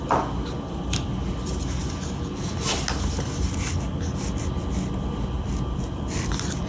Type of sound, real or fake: real